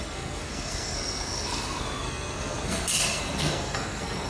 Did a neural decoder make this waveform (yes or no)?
yes